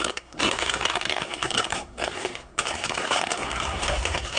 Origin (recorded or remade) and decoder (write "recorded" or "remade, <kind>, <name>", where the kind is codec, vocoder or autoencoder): remade, codec, SNAC